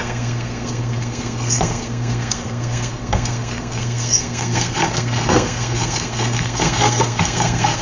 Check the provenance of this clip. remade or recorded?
remade